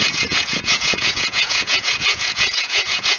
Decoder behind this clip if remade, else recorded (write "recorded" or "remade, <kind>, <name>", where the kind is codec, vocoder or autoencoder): remade, vocoder, Vocos